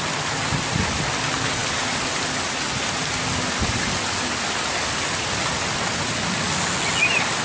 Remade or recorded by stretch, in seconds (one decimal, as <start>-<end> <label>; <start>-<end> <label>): 0.0-7.4 recorded